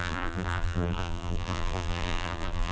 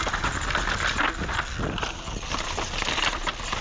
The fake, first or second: first